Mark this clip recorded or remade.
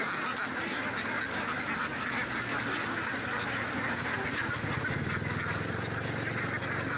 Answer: recorded